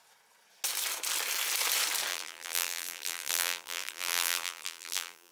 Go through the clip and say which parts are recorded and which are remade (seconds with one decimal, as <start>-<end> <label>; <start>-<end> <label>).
0.0-2.1 recorded; 2.1-5.3 remade

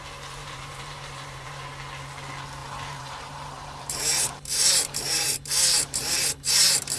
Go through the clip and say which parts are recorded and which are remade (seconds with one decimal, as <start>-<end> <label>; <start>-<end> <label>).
0.0-0.4 recorded; 0.4-1.6 remade; 1.6-2.6 recorded; 2.6-7.0 remade

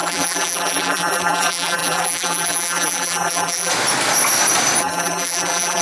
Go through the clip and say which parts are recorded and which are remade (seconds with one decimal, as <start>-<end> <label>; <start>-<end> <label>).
0.0-3.7 remade; 3.7-4.8 recorded; 4.8-5.8 remade

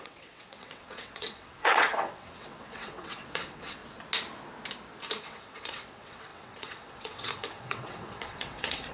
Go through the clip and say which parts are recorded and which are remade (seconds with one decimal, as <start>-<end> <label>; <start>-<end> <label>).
0.0-3.8 remade; 3.8-5.2 recorded; 5.2-8.9 remade

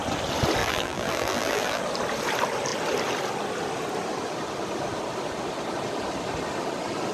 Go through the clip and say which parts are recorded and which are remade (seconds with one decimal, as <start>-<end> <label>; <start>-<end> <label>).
0.0-0.6 recorded; 0.6-1.8 remade; 1.8-7.1 recorded